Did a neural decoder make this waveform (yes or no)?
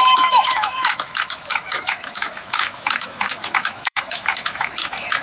yes